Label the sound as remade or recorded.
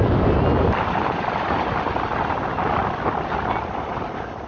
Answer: recorded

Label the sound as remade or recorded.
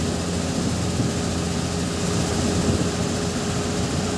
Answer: recorded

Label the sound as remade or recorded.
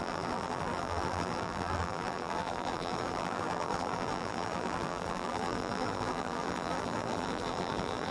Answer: remade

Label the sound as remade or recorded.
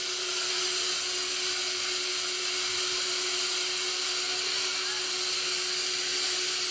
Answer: recorded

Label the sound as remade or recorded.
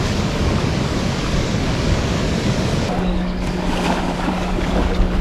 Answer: remade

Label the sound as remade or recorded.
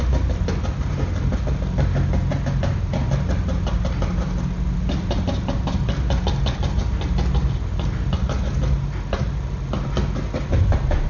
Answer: recorded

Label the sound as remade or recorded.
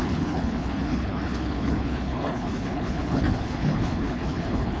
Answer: remade